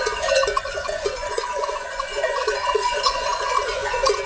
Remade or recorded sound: remade